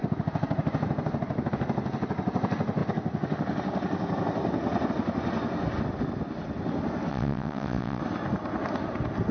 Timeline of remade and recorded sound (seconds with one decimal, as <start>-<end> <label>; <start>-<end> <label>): 0.0-7.1 recorded; 7.1-8.0 remade; 8.0-9.3 recorded